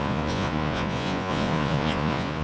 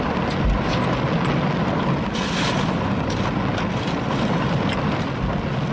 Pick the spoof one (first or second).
first